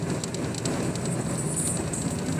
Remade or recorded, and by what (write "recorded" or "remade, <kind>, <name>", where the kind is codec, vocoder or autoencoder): recorded